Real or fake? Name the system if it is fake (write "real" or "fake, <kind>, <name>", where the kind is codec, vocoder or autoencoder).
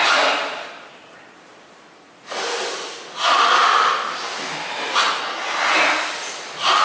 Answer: real